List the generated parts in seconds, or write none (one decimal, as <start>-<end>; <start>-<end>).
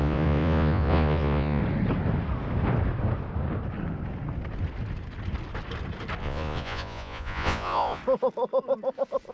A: 0.0-1.6; 6.2-8.0